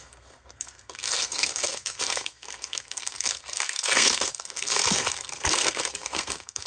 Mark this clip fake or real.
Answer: fake